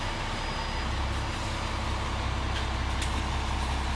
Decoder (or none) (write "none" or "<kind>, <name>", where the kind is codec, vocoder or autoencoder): none